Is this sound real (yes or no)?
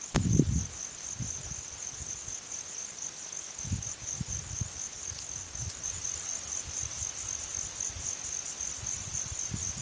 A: yes